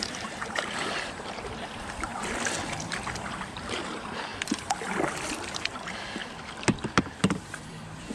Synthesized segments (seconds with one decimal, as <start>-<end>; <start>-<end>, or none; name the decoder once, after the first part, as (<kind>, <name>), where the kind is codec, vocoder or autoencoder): 0.0-2.1 (vocoder, BigVGAN v2); 3.3-4.3; 5.5-6.2; 7.0-8.1